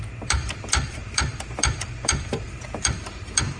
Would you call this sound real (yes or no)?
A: no